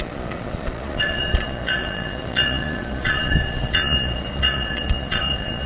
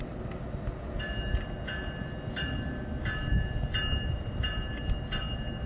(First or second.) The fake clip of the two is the first